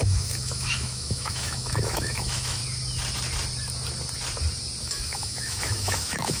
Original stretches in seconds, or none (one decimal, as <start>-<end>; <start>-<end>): 2.6-4.8